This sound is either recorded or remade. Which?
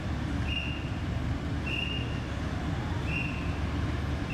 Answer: recorded